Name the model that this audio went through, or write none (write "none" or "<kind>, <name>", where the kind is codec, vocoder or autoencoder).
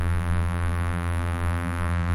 vocoder, BigVGAN v2